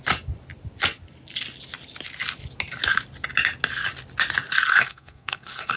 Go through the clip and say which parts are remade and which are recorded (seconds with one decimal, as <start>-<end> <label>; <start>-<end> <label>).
0.0-4.7 recorded; 4.7-5.8 remade